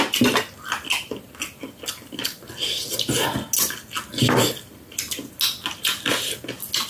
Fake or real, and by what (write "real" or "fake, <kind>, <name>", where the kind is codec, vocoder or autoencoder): real